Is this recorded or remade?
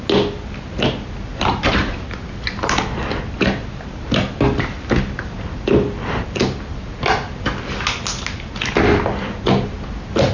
recorded